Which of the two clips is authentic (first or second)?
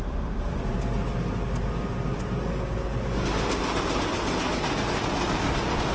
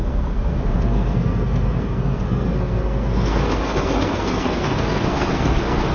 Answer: first